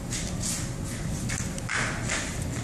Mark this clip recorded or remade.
recorded